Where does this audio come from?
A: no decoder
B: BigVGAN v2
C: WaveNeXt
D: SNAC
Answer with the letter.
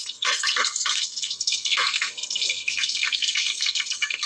D